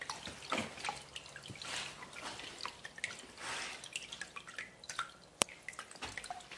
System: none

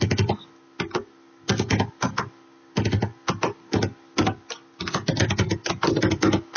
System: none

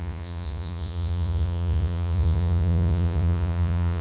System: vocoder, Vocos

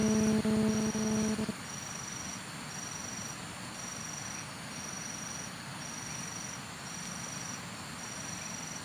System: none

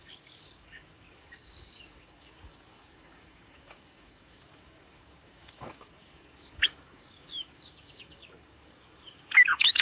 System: codec, DAC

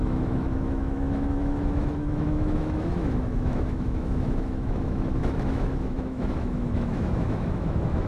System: autoencoder, DAC-VAE